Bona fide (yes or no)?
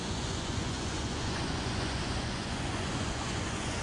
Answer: no